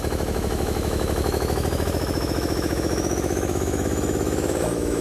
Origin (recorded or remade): remade